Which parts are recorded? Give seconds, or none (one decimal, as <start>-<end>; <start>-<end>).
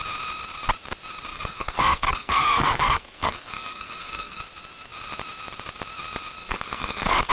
0.0-1.3; 4.4-6.4